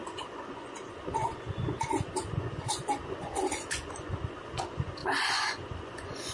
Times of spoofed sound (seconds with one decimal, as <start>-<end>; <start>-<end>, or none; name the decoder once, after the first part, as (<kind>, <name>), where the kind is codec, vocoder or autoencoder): 0.0-6.3 (vocoder, Vocos)